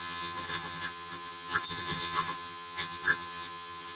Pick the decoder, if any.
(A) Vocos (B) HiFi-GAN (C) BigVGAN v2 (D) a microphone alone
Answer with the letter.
B